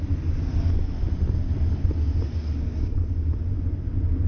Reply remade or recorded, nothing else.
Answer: recorded